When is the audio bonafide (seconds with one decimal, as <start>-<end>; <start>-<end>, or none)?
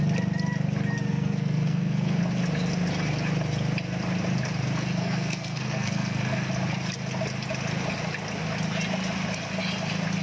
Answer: 0.0-1.1; 2.2-5.0; 6.5-10.2